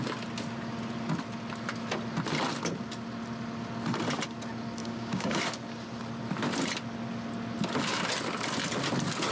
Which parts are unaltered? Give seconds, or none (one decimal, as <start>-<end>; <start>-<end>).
0.0-4.8; 5.4-9.3